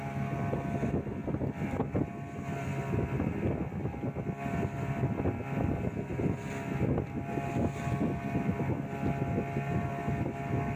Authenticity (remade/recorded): recorded